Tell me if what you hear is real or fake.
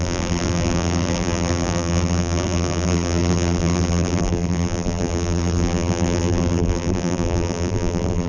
fake